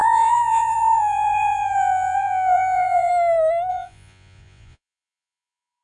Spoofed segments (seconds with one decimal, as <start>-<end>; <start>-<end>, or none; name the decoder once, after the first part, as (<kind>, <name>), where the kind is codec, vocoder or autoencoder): 0.0-3.1 (vocoder, Vocos); 3.7-5.8